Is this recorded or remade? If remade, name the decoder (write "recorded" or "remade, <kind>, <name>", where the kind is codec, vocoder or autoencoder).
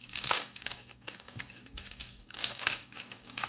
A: remade, codec, DAC